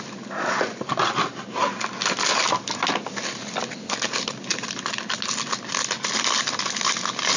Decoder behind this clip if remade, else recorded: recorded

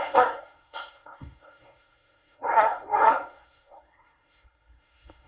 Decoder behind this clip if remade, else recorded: remade, codec, SNAC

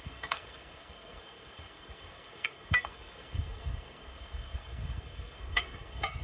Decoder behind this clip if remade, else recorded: remade, codec, SNAC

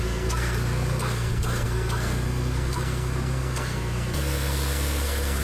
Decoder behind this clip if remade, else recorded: remade, codec, SNAC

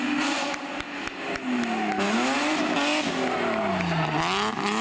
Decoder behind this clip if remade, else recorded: recorded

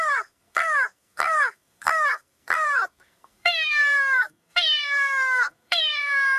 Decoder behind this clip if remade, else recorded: remade, codec, SNAC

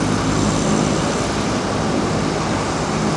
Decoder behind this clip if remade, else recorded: recorded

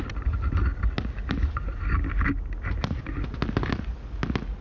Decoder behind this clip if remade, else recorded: recorded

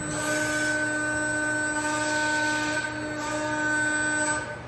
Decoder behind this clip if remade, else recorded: recorded